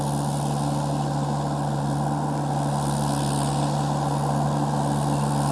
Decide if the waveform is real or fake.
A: real